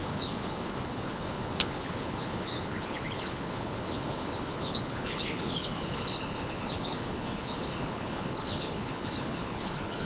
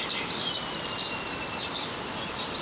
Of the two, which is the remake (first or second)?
first